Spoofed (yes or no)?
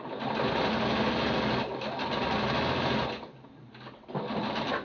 no